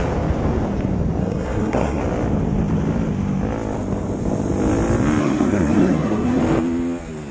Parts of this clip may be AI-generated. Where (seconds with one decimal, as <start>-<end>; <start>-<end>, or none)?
1.2-2.0; 5.2-6.4